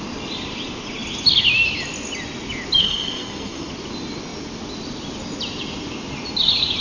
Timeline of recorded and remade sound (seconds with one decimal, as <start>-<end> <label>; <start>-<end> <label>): 0.0-2.8 recorded; 2.8-3.7 remade; 3.7-6.8 recorded